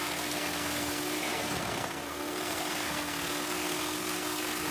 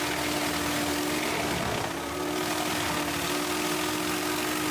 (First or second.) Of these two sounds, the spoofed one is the first